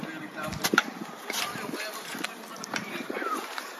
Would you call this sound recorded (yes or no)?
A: no